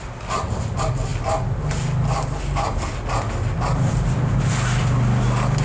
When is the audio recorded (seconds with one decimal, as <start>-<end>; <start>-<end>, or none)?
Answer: 0.0-5.6